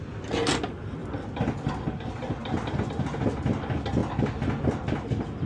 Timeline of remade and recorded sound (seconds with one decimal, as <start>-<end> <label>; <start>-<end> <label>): 0.0-5.5 recorded